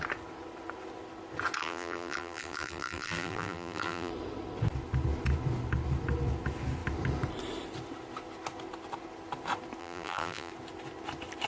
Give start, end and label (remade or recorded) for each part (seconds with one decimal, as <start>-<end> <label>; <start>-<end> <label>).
0.0-1.6 recorded; 1.6-4.1 remade; 4.1-9.8 recorded; 9.8-10.5 remade; 10.5-11.5 recorded